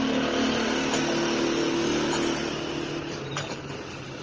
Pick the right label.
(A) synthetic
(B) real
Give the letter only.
B